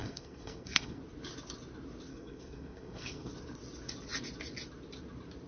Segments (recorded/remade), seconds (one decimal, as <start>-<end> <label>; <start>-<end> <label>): 0.0-1.0 remade; 1.0-2.1 recorded; 2.1-3.3 remade; 3.3-5.5 recorded